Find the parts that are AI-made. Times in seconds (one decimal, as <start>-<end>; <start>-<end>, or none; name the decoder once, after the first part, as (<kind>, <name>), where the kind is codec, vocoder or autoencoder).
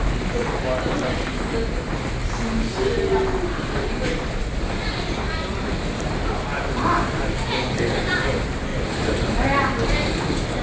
none